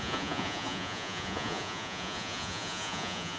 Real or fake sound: fake